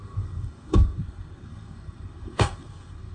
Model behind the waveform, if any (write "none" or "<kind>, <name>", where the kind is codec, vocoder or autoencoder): codec, SNAC